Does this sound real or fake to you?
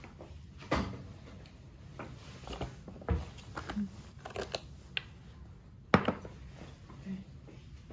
real